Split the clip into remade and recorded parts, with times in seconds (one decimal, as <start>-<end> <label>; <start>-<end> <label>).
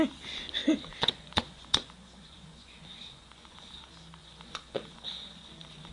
0.0-0.6 recorded; 0.6-3.7 remade; 3.7-4.2 recorded; 4.2-5.9 remade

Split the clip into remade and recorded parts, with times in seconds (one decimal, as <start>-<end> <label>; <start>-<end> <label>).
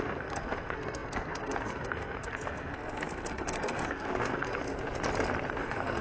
0.0-4.7 remade; 4.7-5.6 recorded; 5.6-6.0 remade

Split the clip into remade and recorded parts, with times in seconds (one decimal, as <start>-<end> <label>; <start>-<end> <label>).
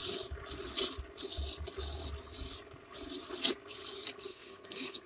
0.0-4.3 recorded; 4.3-5.1 remade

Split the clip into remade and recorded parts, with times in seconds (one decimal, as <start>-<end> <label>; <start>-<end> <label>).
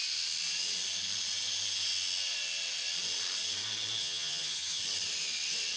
0.0-4.0 recorded; 4.0-4.8 remade; 4.8-5.8 recorded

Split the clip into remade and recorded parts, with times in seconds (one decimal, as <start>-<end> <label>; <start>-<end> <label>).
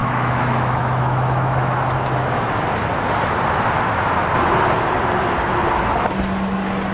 0.0-2.5 remade; 2.5-6.9 recorded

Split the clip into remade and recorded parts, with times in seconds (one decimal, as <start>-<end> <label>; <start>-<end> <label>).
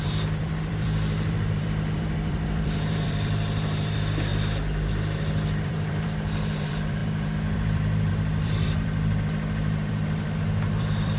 0.0-4.3 remade; 4.3-4.9 recorded; 4.9-11.2 remade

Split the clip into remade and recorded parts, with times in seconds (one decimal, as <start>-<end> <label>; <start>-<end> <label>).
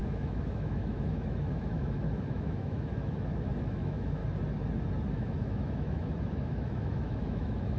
0.0-4.2 remade; 4.2-5.1 recorded; 5.1-7.8 remade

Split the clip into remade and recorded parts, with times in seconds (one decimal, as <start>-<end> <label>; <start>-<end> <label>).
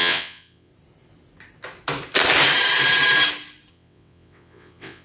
0.0-0.7 remade; 0.7-3.7 recorded; 3.7-5.0 remade